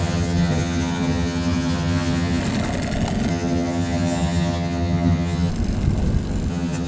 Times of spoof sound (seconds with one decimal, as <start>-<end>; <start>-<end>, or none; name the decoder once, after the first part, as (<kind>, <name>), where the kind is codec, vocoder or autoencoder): 0.0-2.4 (vocoder, HiFi-GAN); 3.3-5.5; 6.5-6.9